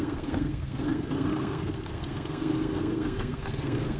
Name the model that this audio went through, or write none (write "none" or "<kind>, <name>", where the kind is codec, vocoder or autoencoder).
codec, SNAC